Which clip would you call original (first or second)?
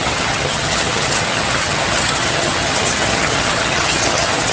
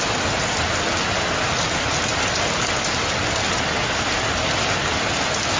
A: second